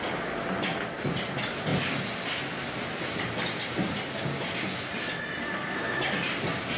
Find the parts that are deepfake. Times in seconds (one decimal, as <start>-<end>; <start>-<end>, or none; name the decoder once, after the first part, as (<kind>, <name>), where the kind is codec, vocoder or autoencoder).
5.4-6.0 (codec, SNAC)